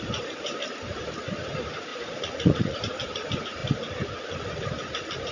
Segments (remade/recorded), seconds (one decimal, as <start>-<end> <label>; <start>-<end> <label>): 0.0-1.9 recorded; 1.9-2.8 remade; 2.8-5.3 recorded